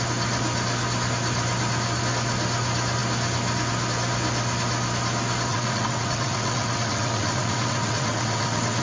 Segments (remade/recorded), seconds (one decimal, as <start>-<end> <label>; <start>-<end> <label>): 0.0-5.5 recorded; 5.5-8.8 remade